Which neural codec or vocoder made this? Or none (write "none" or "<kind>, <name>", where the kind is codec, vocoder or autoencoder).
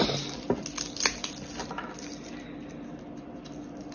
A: none